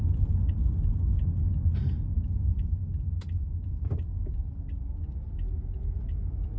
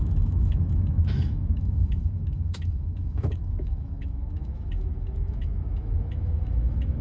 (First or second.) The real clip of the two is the first